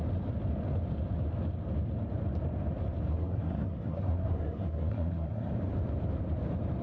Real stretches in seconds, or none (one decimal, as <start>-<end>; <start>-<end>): 0.0-3.1; 5.5-6.8

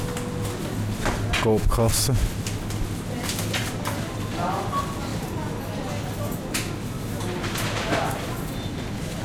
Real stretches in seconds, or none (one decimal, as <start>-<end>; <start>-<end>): 0.0-9.2

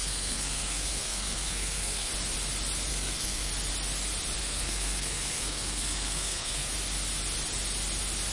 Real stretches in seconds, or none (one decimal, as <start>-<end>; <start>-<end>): 2.1-2.9; 3.5-4.4; 6.7-8.3